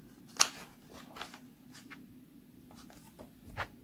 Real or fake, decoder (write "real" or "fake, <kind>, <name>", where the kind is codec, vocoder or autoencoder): real